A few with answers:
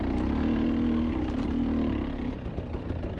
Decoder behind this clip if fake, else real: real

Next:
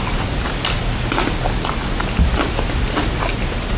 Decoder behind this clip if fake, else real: real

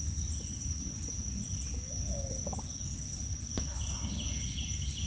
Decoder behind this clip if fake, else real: real